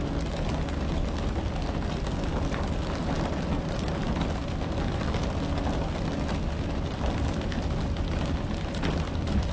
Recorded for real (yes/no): yes